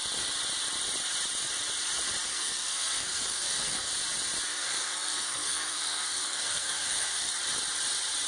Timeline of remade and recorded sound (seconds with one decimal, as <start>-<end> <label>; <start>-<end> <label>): 0.0-2.3 recorded; 2.3-3.9 remade; 3.9-4.5 recorded; 4.5-7.3 remade; 7.3-8.3 recorded